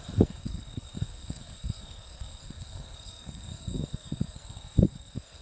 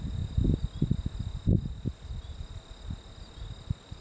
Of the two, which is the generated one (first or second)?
first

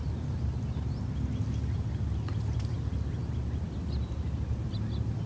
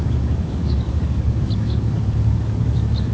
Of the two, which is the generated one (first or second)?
second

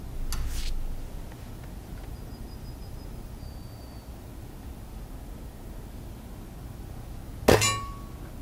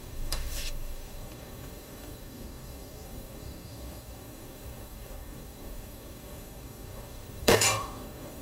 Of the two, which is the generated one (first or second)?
second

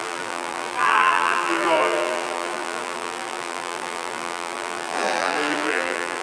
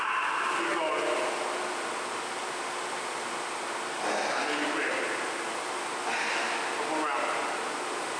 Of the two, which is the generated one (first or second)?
first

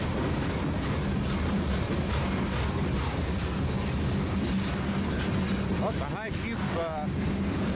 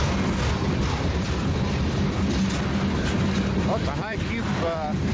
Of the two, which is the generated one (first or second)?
second